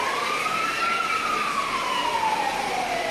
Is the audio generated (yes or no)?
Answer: no